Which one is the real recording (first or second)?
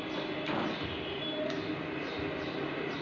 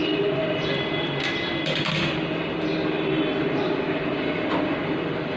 first